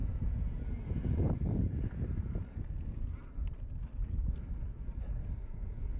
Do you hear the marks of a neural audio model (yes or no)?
no